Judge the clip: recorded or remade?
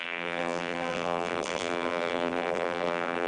remade